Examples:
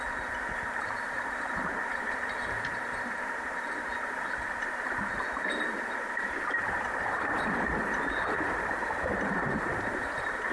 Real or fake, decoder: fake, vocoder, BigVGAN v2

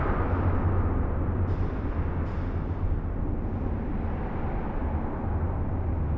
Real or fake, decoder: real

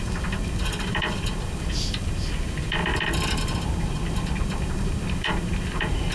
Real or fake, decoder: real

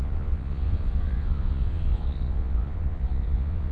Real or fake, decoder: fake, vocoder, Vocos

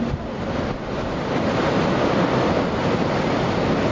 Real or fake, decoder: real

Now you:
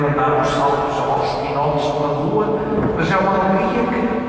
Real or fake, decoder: real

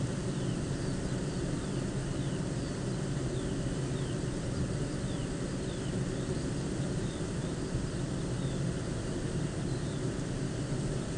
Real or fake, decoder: real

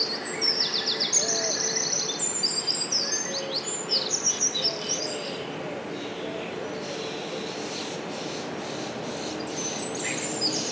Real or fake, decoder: real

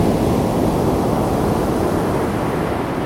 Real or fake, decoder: real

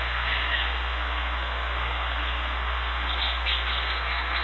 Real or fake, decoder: fake, codec, SNAC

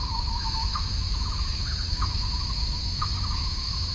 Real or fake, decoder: fake, autoencoder, DAC-VAE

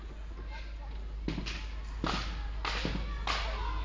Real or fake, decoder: real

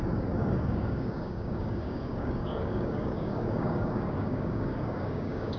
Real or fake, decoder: fake, codec, DAC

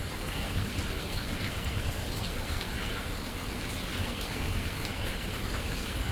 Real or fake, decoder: fake, codec, SNAC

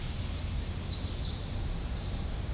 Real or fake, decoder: fake, vocoder, BigVGAN v2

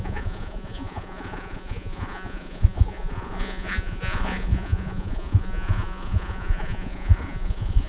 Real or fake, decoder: fake, vocoder, Vocos